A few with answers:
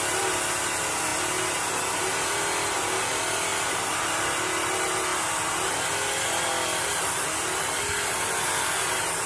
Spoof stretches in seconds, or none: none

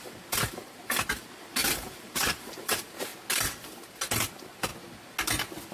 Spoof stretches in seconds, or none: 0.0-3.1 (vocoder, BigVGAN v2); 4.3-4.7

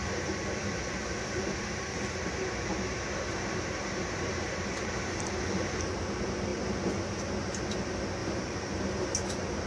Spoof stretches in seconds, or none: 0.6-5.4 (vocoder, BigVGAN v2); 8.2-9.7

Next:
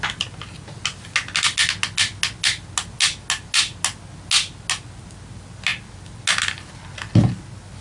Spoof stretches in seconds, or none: none

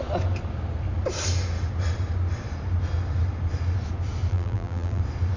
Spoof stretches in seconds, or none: 4.3-5.0 (vocoder, BigVGAN v2)